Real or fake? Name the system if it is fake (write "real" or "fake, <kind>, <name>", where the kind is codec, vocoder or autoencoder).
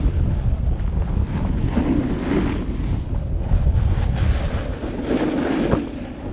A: real